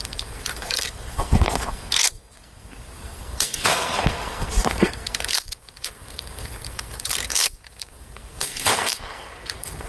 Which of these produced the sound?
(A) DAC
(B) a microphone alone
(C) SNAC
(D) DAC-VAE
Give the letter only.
C